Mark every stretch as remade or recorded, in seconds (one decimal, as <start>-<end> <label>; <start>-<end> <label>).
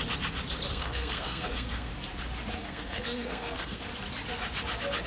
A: 0.0-0.7 recorded; 0.7-1.9 remade; 1.9-2.5 recorded; 2.5-3.9 remade; 3.9-5.1 recorded